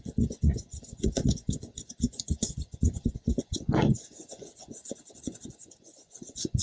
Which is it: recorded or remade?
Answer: remade